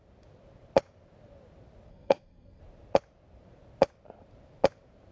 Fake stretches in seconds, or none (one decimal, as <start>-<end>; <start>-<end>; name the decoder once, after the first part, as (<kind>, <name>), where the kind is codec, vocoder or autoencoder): 1.9-2.6 (codec, SNAC)